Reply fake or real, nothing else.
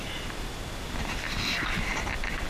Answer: real